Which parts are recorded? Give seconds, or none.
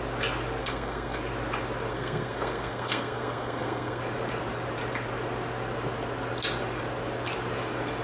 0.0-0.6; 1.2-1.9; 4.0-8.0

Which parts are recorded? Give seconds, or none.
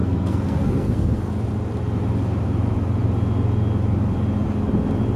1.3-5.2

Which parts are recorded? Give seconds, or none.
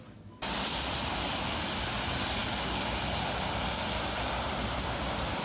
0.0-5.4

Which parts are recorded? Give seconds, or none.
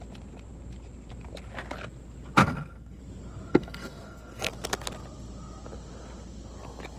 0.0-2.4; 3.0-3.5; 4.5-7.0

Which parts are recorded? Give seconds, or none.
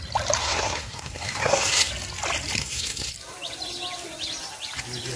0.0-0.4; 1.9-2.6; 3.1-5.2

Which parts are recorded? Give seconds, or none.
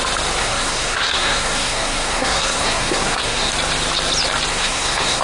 0.0-0.4; 3.5-4.5